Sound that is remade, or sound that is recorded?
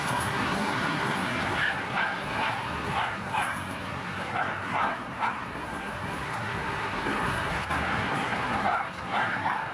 remade